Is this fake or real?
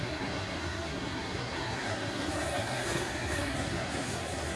fake